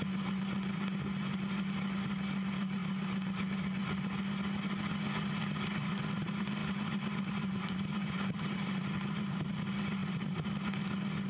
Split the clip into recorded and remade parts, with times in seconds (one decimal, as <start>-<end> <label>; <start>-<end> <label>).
0.0-6.6 recorded; 6.6-9.5 remade; 9.5-10.0 recorded; 10.0-10.5 remade; 10.5-11.3 recorded